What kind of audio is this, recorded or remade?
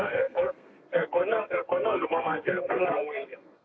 remade